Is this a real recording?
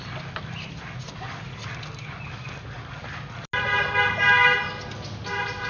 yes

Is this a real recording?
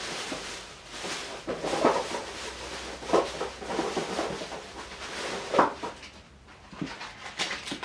yes